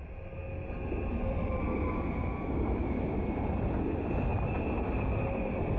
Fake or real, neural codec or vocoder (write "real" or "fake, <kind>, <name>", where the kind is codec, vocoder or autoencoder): real